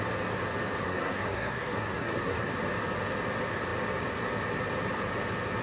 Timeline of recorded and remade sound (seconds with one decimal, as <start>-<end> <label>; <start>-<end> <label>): 0.0-0.8 recorded; 0.8-2.5 remade; 2.5-5.6 recorded